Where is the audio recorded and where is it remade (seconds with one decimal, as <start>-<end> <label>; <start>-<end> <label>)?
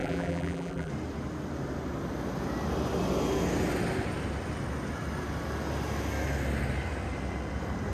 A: 0.0-0.9 remade; 0.9-7.9 recorded